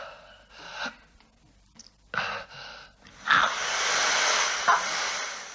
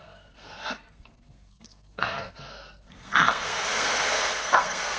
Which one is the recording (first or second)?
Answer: first